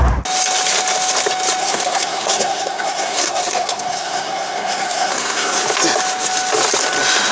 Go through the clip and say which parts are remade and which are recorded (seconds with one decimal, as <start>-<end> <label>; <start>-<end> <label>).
0.0-1.6 recorded; 1.6-5.6 remade; 5.6-7.3 recorded